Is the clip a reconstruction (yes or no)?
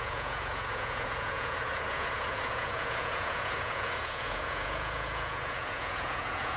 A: yes